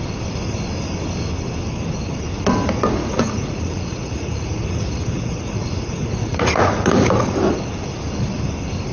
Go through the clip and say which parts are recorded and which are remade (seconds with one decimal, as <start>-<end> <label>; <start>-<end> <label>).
0.0-3.0 recorded; 3.0-7.1 remade; 7.1-8.9 recorded